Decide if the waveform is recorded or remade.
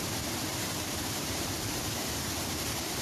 remade